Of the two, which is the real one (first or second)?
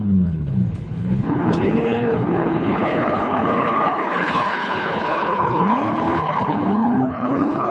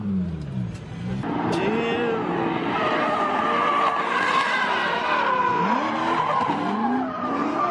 second